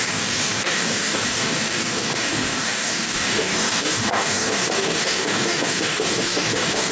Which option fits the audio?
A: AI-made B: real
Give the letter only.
A